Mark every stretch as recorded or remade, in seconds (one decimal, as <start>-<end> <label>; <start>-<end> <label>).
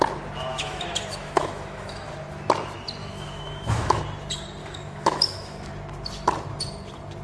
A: 0.0-0.5 recorded; 0.5-2.1 remade; 2.1-3.0 recorded; 3.0-4.0 remade; 4.0-4.6 recorded; 4.6-5.7 remade; 5.7-7.2 recorded